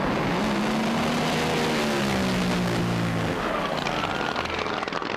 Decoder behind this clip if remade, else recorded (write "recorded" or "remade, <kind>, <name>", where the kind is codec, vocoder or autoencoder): recorded